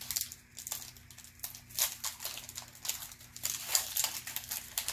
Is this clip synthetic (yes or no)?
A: no